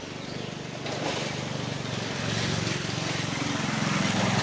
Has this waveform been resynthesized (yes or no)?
no